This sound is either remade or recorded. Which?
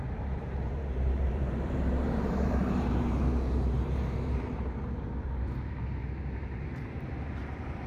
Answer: remade